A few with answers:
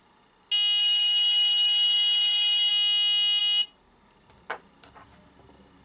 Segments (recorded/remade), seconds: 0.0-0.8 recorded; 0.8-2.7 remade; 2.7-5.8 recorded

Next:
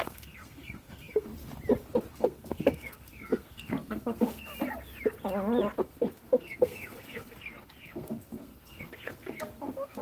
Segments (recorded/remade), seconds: 0.0-1.3 remade; 1.3-2.1 recorded; 2.1-4.5 remade; 4.5-5.8 recorded; 5.8-10.0 remade

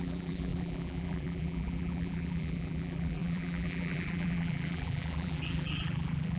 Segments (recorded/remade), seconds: 0.0-6.4 remade

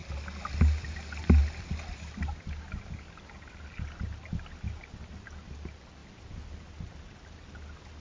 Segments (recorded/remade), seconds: 0.0-8.0 recorded

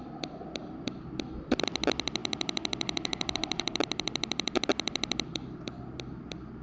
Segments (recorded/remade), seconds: 0.0-6.6 recorded

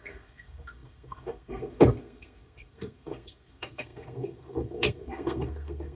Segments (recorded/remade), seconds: 0.0-6.0 remade

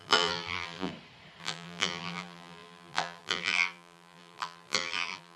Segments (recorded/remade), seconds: 0.0-0.9 remade; 0.9-1.4 recorded; 1.4-5.4 remade

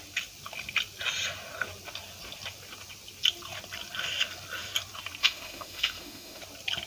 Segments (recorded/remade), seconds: 0.0-5.2 recorded; 5.2-6.4 remade; 6.4-6.9 recorded